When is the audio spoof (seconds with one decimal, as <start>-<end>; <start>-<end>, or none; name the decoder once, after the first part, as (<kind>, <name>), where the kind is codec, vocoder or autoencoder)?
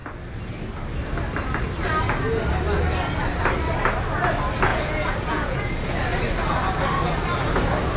4.7-5.7 (vocoder, Vocos)